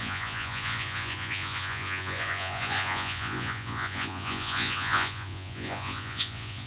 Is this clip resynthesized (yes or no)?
yes